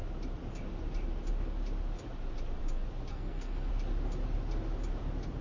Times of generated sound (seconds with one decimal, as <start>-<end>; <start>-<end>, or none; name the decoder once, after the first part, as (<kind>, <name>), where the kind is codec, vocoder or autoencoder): 3.1-3.7 (codec, SNAC)